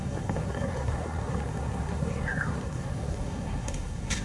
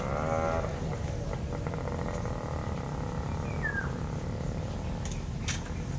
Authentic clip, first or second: second